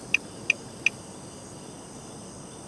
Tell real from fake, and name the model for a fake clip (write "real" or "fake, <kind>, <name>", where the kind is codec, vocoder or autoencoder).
real